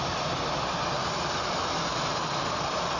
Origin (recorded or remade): remade